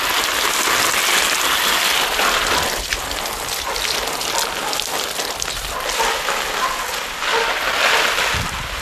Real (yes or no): yes